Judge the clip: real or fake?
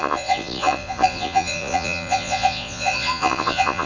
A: fake